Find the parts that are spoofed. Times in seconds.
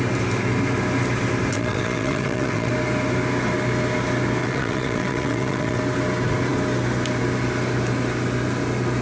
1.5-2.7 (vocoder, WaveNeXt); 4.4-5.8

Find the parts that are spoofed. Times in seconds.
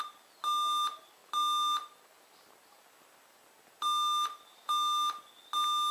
none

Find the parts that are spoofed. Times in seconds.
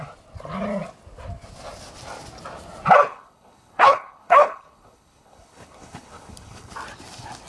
3.1-6.7 (codec, HILCodec)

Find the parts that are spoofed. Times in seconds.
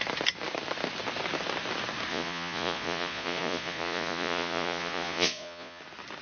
2.1-5.8 (vocoder, Vocos)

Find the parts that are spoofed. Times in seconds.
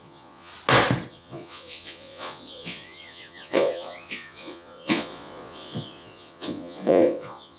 0.0-0.5 (vocoder, Vocos); 1.1-7.6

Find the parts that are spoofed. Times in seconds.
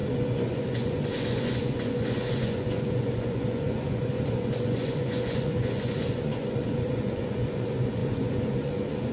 0.0-9.1 (vocoder, Vocos)